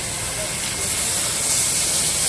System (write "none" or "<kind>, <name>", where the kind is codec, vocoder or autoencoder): none